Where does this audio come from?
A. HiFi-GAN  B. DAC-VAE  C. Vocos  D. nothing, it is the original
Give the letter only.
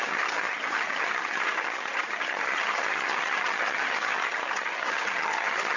A